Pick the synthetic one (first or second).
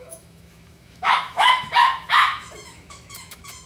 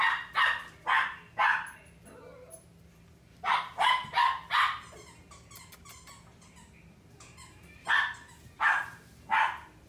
first